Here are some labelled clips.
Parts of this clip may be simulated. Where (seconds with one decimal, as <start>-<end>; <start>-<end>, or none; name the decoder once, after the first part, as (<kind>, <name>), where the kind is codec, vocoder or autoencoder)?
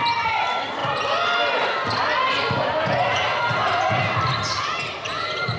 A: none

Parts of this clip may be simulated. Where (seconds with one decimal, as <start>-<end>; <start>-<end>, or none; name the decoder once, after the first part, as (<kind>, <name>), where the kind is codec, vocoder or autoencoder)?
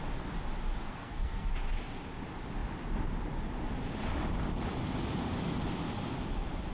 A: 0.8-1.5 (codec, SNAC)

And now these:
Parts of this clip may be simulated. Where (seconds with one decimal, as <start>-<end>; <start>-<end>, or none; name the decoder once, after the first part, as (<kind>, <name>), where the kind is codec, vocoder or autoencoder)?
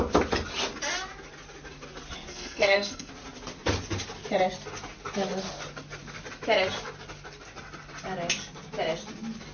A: 2.3-3.1 (codec, SNAC)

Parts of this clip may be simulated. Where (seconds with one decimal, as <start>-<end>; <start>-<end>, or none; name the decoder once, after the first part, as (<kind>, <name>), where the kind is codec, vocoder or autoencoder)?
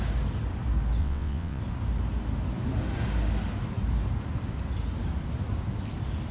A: 1.0-1.6 (vocoder, WaveNeXt)